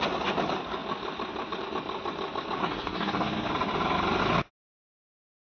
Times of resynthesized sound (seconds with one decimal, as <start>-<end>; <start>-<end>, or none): 2.6-3.5